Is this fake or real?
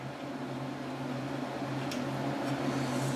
real